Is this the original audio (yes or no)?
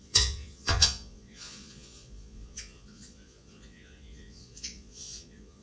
no